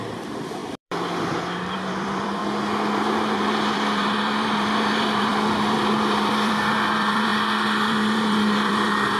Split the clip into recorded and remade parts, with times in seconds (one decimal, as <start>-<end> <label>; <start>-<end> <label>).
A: 0.0-2.4 remade; 2.4-2.9 recorded; 2.9-7.3 remade; 7.3-7.9 recorded; 7.9-9.2 remade

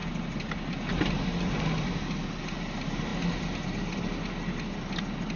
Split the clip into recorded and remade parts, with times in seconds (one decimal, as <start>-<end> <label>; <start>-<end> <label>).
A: 0.0-5.4 recorded

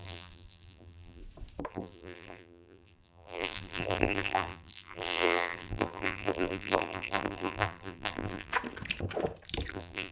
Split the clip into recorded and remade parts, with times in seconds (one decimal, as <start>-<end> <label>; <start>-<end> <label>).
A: 0.0-1.2 remade; 1.2-1.7 recorded; 1.7-8.5 remade; 8.5-9.7 recorded; 9.7-10.1 remade

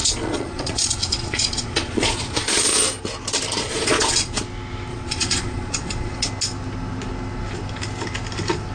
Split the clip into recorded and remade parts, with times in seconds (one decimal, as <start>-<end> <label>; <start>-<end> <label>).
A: 0.0-2.7 remade; 2.7-3.6 recorded; 3.6-4.4 remade; 4.4-4.9 recorded; 4.9-6.3 remade; 6.3-8.7 recorded